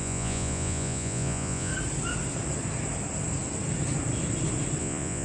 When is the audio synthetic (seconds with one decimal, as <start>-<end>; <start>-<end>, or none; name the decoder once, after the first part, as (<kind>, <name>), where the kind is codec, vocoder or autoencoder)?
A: 0.0-1.7 (vocoder, Vocos); 4.8-5.2